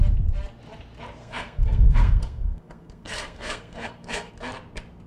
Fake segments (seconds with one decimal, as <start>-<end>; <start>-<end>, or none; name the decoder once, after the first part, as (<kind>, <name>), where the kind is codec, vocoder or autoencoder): 1.2-4.3 (codec, SNAC)